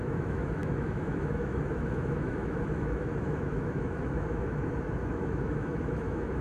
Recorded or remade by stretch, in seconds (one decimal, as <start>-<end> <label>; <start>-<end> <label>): 0.0-6.4 remade